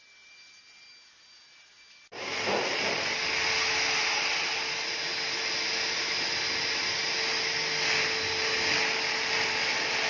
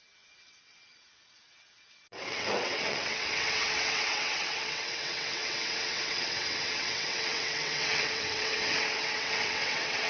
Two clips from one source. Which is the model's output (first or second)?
second